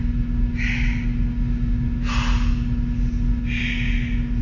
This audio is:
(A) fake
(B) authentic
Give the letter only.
B